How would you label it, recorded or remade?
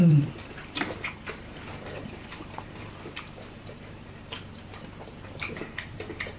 remade